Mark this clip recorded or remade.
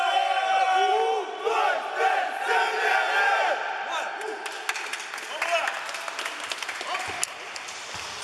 recorded